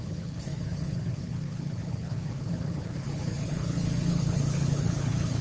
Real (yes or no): no